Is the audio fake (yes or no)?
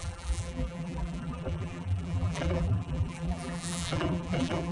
yes